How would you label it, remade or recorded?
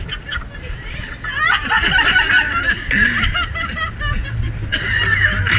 recorded